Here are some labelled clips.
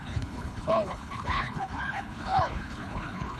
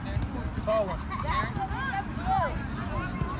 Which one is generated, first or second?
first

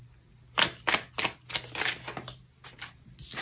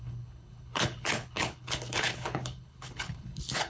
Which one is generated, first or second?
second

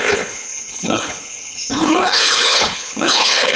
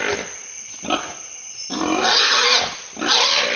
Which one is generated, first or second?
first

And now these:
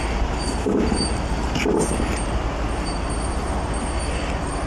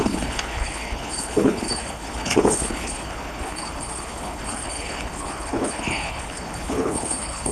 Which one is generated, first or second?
second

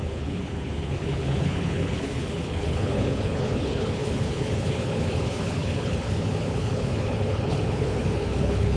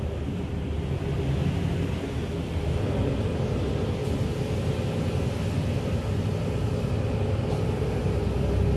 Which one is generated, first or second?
first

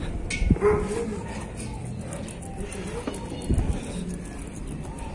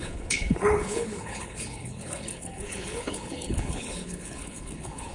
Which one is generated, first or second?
second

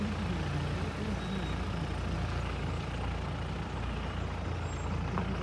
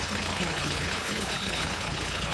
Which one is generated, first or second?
second